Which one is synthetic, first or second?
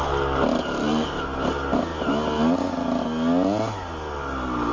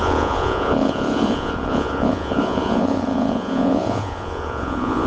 second